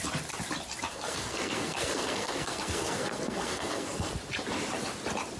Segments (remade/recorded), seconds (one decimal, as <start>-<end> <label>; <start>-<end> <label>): 0.0-0.9 recorded; 0.9-4.1 remade; 4.1-5.4 recorded